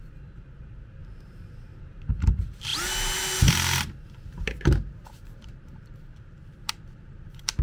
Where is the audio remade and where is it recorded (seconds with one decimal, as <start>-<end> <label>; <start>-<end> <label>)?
0.0-2.7 remade; 2.7-4.0 recorded; 4.0-7.6 remade